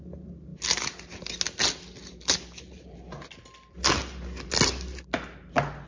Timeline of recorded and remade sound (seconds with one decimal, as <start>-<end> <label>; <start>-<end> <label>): 0.0-5.9 recorded